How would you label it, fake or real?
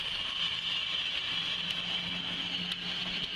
real